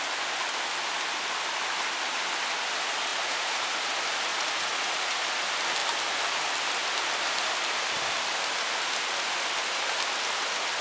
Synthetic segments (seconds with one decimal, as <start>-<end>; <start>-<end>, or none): 3.1-3.8; 4.3-5.2